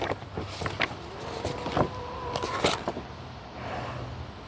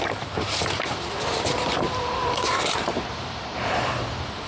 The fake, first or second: second